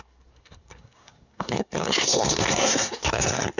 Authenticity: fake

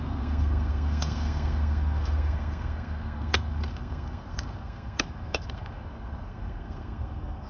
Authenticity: fake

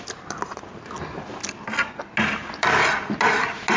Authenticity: real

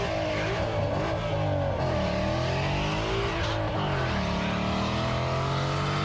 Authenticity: real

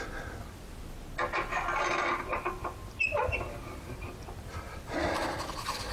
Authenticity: real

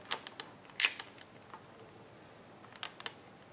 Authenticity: real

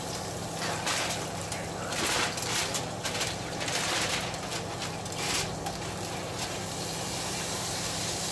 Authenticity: real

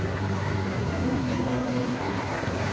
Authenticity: fake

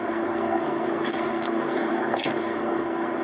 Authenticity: fake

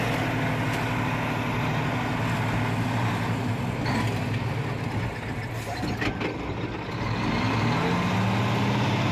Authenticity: real